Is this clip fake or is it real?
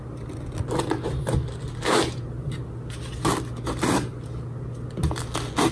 real